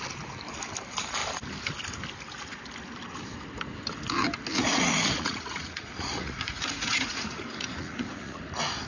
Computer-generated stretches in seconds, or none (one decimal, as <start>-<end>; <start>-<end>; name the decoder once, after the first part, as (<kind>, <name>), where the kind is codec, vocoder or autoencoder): 4.5-8.4 (vocoder, Vocos)